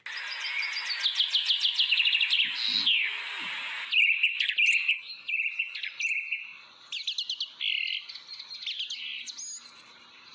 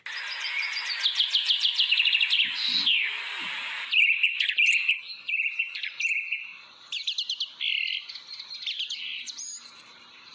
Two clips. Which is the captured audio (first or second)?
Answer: first